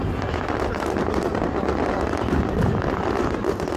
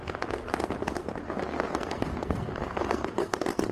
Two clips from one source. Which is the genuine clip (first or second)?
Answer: first